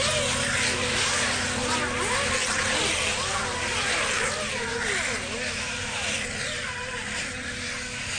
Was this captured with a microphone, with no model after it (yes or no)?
yes